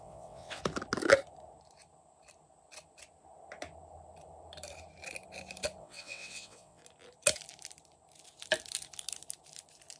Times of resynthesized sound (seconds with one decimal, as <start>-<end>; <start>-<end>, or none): 0.0-0.6; 5.8-6.8